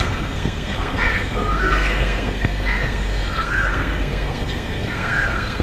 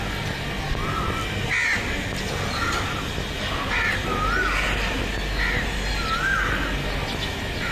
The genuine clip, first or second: second